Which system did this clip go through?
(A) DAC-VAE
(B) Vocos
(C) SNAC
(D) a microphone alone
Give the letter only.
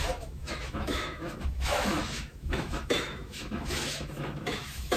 A